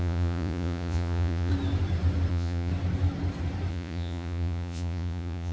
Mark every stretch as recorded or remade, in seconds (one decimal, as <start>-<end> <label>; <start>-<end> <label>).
0.0-1.5 remade; 1.5-2.3 recorded; 2.3-2.7 remade; 2.7-3.7 recorded; 3.7-5.5 remade